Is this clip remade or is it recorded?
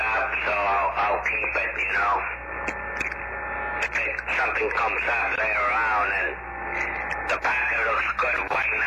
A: recorded